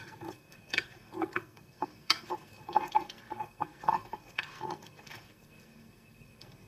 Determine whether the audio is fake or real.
fake